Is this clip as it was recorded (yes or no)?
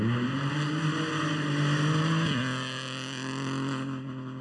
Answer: yes